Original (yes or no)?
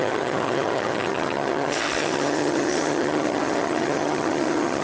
no